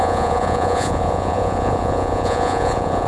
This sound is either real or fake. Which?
fake